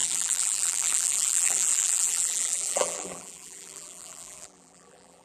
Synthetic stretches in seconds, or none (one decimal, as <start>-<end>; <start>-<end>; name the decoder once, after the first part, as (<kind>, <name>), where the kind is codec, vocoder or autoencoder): 0.0-5.2 (vocoder, BigVGAN v2)